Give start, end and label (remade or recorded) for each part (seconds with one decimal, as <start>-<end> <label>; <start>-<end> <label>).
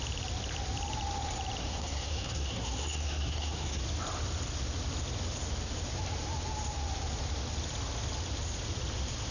0.0-1.6 recorded; 1.6-3.8 remade; 3.8-9.3 recorded